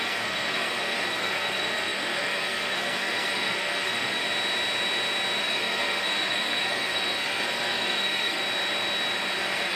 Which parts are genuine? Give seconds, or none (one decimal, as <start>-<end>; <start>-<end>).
4.2-5.4; 8.4-9.4